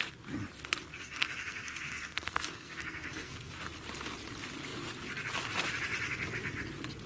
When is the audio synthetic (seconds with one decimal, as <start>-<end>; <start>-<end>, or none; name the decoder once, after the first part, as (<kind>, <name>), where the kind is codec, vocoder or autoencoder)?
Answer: 0.9-3.5 (codec, SNAC)